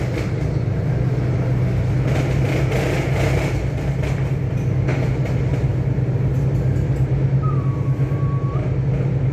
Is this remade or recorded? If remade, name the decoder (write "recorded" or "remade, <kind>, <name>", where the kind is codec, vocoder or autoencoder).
recorded